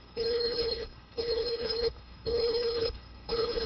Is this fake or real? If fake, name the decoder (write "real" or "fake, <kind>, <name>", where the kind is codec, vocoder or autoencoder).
fake, codec, HILCodec